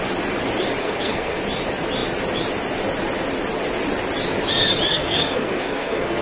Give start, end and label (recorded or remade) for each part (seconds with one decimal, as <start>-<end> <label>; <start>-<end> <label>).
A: 0.0-0.8 recorded; 0.8-1.4 remade; 1.4-4.9 recorded; 4.9-6.2 remade